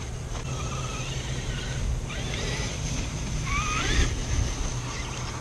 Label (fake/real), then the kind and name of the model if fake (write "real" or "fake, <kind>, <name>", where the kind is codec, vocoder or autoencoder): real